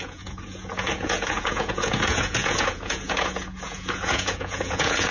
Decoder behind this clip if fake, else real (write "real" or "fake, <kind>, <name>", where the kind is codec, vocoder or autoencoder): fake, vocoder, Vocos